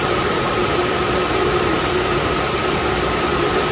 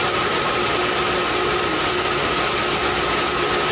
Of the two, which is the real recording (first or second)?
second